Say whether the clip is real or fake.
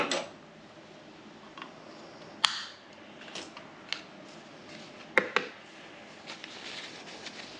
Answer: real